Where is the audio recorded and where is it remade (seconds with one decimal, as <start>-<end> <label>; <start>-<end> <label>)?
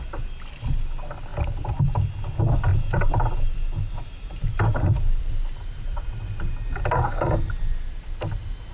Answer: 0.0-2.7 recorded; 2.7-7.6 remade; 7.6-8.7 recorded